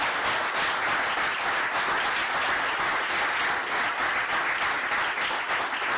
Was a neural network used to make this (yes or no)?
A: no